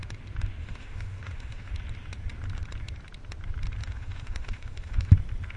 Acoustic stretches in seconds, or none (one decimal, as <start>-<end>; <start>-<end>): 0.0-0.6; 1.7-3.8; 5.1-5.6